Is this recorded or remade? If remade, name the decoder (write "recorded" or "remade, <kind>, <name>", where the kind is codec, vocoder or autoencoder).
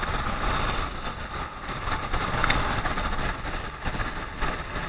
recorded